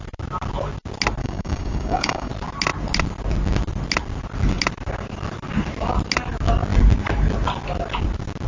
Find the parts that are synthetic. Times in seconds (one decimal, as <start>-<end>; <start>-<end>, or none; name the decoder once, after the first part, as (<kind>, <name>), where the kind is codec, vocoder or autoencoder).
1.2-2.3 (codec, DAC)